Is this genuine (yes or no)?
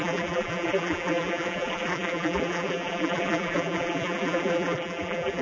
no